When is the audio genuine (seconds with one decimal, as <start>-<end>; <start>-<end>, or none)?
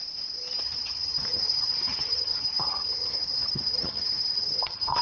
0.0-0.6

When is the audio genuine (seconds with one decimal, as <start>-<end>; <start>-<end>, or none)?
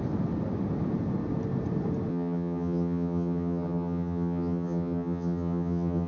0.0-2.1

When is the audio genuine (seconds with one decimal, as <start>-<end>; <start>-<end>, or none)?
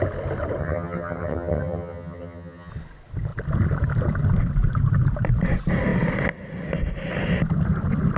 0.0-0.6; 2.7-8.2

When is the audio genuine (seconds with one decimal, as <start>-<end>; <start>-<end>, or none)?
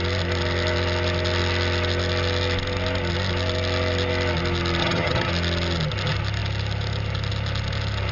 0.0-4.8; 5.3-8.1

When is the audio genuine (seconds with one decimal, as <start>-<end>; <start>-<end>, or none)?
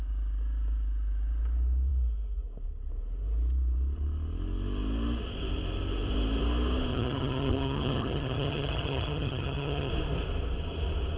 0.0-6.9; 9.9-11.2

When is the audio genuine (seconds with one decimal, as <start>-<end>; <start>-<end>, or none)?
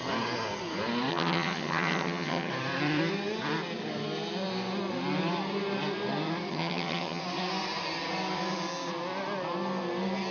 0.0-1.1; 2.5-6.5; 7.2-10.3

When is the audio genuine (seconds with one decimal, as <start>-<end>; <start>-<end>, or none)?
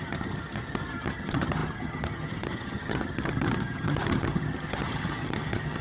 none